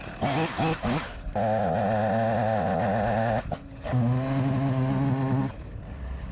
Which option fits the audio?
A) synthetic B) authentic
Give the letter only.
B